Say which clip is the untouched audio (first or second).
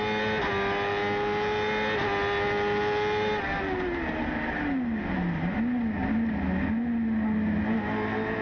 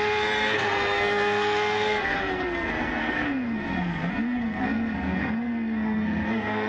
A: first